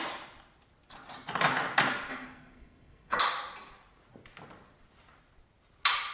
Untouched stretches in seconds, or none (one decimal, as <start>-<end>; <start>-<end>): 0.0-2.1; 3.2-6.1